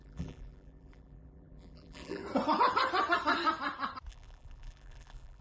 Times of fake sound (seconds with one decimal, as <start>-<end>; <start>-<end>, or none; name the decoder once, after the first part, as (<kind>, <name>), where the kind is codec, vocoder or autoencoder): 0.0-2.2 (vocoder, BigVGAN v2); 4.1-5.4